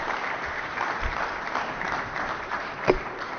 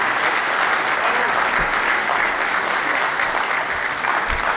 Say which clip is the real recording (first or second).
second